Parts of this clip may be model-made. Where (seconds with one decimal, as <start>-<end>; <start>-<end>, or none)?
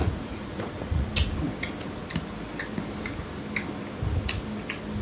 0.0-1.1